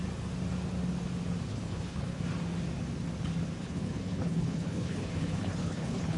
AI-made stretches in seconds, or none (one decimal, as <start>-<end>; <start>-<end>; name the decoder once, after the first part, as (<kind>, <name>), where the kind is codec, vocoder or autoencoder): 1.5-2.2 (codec, HILCodec); 3.6-6.2